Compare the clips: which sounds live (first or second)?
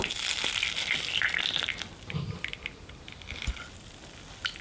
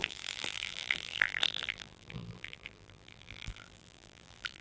first